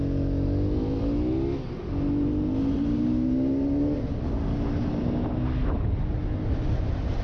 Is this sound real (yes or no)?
yes